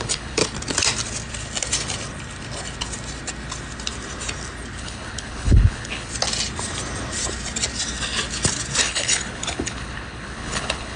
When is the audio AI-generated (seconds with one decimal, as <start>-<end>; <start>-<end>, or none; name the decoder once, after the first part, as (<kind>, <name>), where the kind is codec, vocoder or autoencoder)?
0.0-0.4 (codec, HILCodec); 4.8-6.1; 8.8-11.0